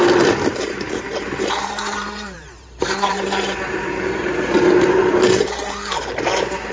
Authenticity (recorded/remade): remade